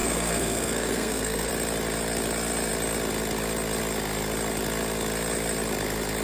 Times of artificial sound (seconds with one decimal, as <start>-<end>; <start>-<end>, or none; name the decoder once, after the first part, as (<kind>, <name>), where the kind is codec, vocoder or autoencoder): 0.0-1.5 (codec, SNAC)